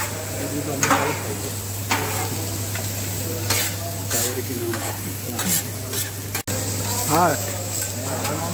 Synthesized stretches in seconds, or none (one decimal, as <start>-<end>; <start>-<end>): 4.0-4.9; 7.3-7.9